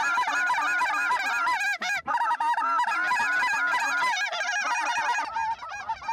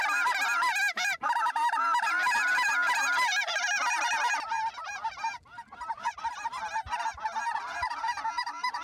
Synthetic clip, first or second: second